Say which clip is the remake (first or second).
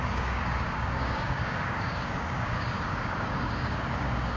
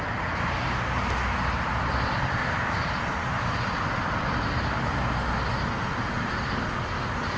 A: first